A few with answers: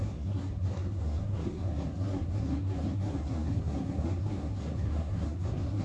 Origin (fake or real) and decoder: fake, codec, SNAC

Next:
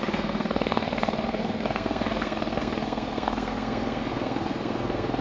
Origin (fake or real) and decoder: fake, codec, SNAC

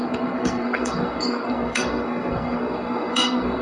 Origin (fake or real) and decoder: fake, codec, SNAC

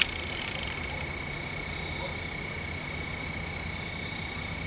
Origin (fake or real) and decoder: real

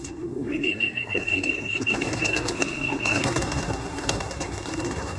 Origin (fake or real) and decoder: fake, codec, SNAC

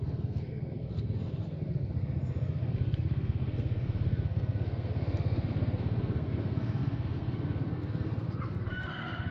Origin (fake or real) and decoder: fake, codec, SNAC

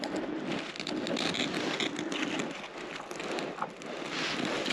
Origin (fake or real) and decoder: real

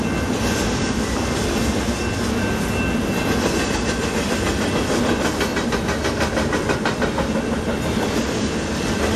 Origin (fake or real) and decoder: real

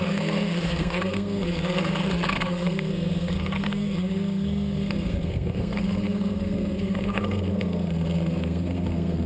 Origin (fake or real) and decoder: fake, codec, SNAC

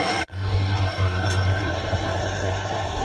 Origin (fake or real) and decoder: fake, codec, SNAC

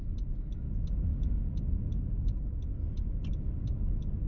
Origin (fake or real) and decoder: real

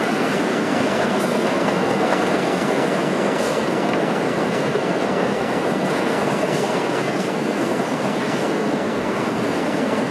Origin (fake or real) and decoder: fake, codec, SNAC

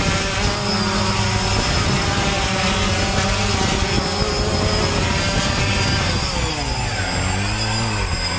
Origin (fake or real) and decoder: real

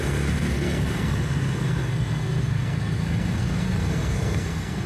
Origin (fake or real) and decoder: fake, codec, SNAC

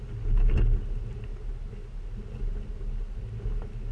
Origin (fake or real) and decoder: real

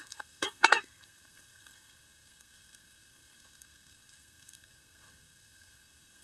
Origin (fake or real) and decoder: fake, codec, SNAC